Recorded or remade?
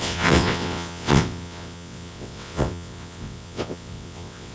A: remade